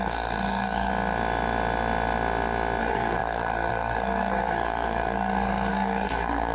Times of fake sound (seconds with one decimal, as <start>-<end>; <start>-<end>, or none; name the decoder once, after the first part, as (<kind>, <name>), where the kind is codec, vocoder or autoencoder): 0.0-0.9 (codec, SNAC); 2.8-6.5